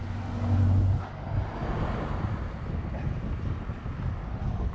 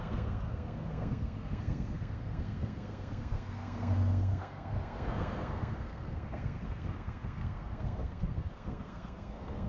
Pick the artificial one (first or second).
second